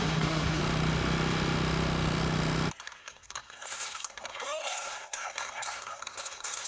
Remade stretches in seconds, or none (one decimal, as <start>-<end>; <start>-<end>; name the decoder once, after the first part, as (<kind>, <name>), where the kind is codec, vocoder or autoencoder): 0.0-0.6 (codec, SNAC); 2.8-6.7